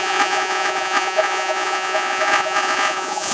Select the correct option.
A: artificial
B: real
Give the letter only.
A